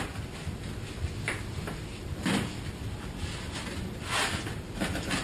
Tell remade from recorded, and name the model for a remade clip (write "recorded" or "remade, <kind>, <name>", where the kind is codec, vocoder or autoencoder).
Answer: recorded